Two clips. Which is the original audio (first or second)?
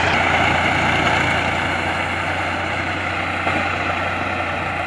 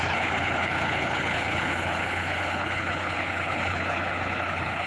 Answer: first